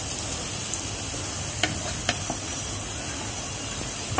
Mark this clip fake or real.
real